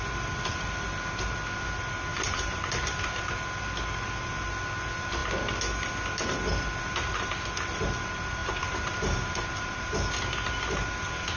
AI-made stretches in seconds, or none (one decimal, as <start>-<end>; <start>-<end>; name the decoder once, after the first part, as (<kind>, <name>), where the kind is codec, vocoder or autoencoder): 2.1-2.9 (vocoder, BigVGAN v2); 8.4-10.1